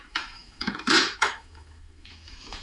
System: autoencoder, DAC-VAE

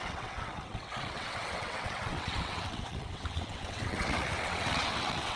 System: vocoder, WaveNeXt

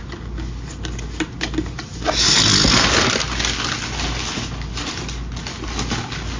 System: none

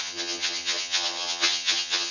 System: vocoder, HiFi-GAN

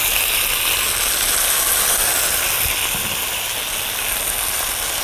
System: none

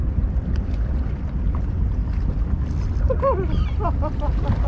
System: none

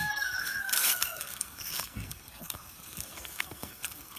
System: codec, SNAC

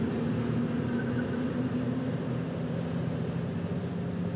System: none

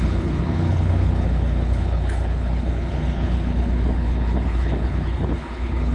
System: codec, HILCodec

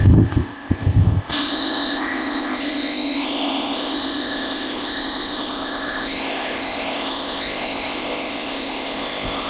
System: codec, ZipCodec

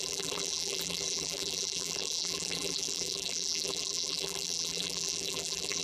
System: vocoder, BigVGAN v2